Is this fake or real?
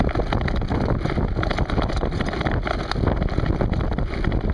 real